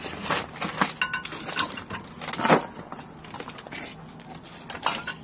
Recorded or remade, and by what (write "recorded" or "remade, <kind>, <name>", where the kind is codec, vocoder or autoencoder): recorded